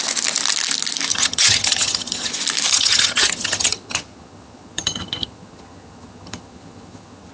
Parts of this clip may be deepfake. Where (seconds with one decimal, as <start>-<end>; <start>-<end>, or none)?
1.1-2.3; 2.7-7.3